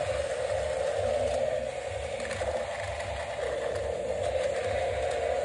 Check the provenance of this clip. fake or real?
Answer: real